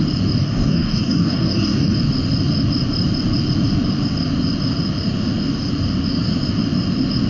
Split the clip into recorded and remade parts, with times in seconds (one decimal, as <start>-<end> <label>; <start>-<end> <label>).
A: 0.0-0.4 recorded; 0.4-1.9 remade; 1.9-7.3 recorded